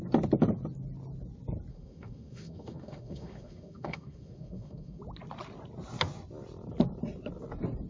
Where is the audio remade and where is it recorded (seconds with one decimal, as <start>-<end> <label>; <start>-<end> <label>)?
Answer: 0.0-1.7 recorded; 1.7-5.0 remade; 5.0-7.9 recorded